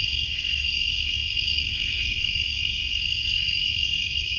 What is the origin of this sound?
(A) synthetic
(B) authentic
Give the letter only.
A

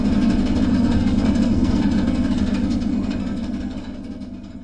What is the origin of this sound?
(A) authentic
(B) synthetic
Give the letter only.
B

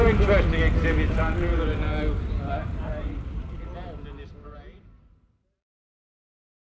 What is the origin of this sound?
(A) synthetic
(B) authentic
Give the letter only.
B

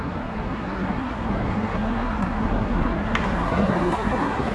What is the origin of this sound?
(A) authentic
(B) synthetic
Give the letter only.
B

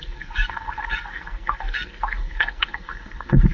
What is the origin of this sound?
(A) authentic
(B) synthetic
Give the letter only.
B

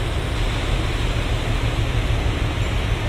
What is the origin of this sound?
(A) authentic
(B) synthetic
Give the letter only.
A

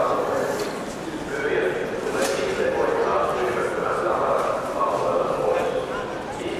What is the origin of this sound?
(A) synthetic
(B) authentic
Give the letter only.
B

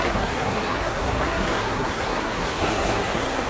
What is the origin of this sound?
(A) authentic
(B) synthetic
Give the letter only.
B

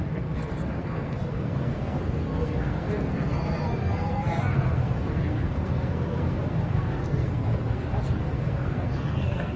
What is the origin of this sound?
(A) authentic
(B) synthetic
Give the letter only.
B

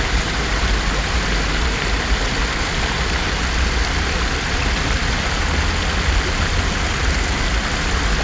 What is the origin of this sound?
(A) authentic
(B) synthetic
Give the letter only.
A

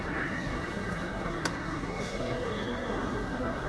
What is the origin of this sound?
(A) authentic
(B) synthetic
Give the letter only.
B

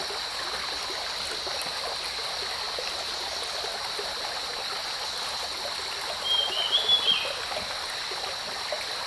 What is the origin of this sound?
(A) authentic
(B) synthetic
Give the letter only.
A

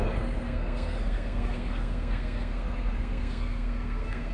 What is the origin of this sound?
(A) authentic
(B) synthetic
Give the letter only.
B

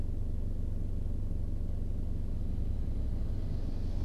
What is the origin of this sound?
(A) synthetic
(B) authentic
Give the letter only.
B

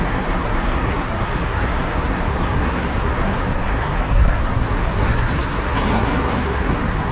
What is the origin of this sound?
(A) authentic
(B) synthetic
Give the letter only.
B